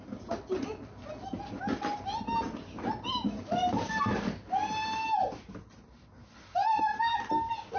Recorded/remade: recorded